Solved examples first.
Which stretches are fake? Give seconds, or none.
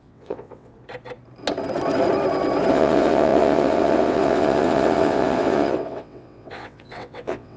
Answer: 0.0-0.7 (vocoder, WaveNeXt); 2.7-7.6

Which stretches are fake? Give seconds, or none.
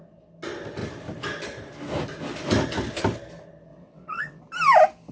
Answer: 3.7-4.4 (vocoder, WaveNeXt)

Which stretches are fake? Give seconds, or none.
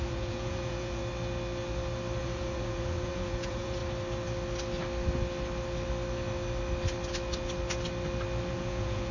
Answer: 0.0-1.0 (vocoder, Vocos); 2.2-3.8; 8.5-9.1